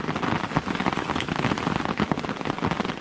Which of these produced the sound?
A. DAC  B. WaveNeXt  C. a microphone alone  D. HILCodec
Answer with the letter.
C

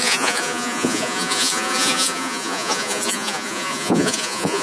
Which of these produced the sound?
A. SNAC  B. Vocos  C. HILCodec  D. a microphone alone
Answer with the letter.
B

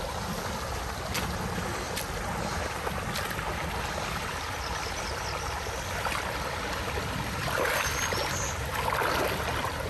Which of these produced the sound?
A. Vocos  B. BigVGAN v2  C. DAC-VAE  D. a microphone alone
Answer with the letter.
D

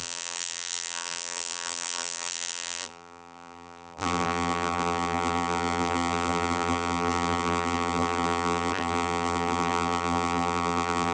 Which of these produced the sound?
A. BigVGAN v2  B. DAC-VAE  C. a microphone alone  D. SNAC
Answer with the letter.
A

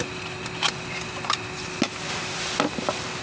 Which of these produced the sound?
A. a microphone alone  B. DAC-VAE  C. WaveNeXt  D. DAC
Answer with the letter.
A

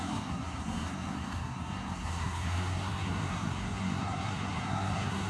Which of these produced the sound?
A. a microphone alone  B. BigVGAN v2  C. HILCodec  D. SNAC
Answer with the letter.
D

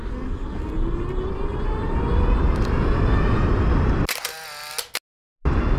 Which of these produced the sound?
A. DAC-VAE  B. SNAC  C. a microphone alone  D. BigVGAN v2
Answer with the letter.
C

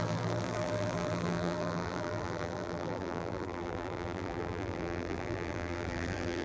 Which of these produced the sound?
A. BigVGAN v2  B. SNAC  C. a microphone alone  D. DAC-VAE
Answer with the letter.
A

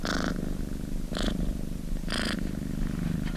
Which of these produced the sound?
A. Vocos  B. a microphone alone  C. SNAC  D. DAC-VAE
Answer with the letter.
B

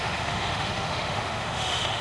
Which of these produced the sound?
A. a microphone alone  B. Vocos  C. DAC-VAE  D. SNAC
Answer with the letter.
C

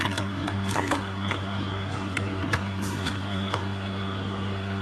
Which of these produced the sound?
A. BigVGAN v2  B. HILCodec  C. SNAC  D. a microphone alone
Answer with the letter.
C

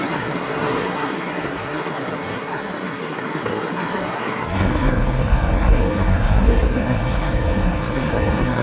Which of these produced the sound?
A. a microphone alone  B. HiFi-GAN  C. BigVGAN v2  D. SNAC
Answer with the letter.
D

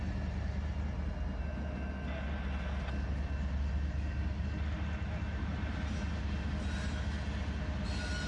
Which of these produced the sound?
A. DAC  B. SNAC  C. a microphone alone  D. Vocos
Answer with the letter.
C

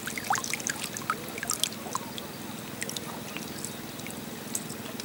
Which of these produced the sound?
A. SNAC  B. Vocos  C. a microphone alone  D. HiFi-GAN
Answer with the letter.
C